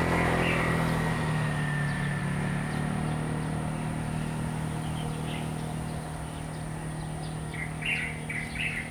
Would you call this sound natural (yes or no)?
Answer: yes